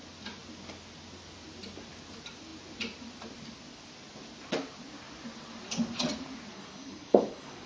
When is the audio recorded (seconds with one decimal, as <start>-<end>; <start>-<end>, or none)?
0.0-6.5